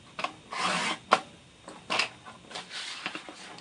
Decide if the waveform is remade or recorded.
recorded